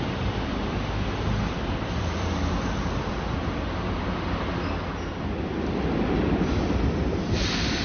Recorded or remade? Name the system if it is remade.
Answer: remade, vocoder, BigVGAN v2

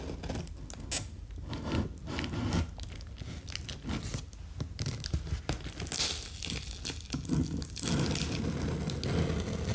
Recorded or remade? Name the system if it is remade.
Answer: recorded